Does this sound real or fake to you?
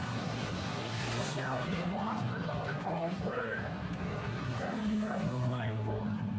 fake